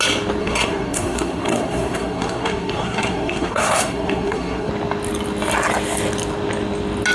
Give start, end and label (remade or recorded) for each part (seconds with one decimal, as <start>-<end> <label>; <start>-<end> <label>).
0.0-0.4 recorded; 0.4-4.7 remade; 4.7-7.1 recorded